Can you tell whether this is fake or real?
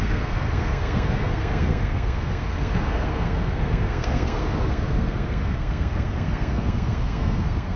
fake